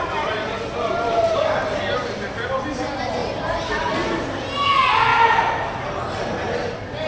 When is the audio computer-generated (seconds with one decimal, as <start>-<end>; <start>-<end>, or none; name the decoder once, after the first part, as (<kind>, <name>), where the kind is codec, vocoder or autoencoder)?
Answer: none